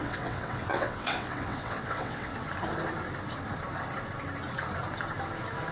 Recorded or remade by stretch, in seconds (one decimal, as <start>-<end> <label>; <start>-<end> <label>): 0.0-2.3 remade; 2.3-5.7 recorded